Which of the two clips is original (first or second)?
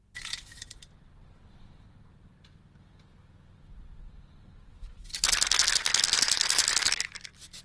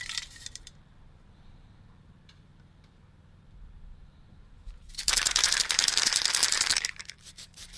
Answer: first